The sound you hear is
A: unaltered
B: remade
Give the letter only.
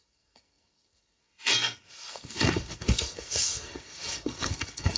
B